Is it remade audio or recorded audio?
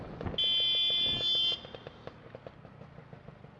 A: recorded